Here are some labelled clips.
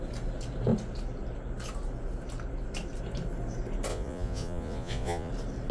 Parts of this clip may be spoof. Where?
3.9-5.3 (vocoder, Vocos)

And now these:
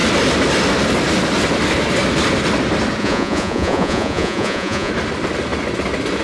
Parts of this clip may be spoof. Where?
3.0-4.9 (vocoder, Vocos)

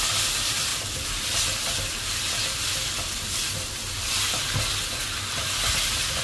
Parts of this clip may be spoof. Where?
0.7-4.4 (vocoder, BigVGAN v2)